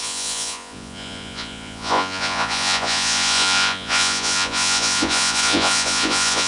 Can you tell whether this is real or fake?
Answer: fake